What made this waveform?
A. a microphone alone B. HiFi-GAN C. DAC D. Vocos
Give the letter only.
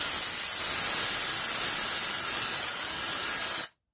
A